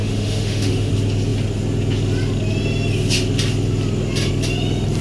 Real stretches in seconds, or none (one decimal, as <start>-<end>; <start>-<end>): 0.9-5.0

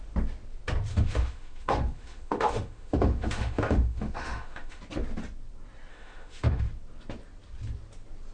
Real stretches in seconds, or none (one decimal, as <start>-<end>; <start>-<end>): 0.0-0.9; 4.8-5.9; 6.7-8.3

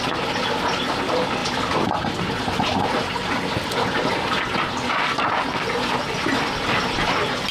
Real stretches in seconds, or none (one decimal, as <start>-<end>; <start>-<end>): 0.0-7.5

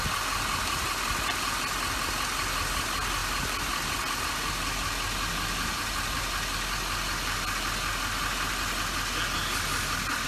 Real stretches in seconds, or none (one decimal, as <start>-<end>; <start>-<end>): 0.0-10.3

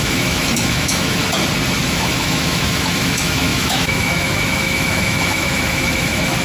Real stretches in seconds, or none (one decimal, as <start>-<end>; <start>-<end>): 1.2-1.8

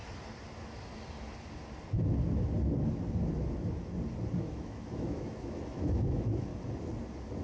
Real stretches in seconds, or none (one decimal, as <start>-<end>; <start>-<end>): 0.0-4.4; 6.5-7.4

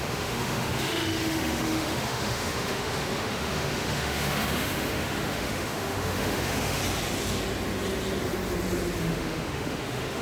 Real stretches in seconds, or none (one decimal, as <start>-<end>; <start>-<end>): 6.8-9.0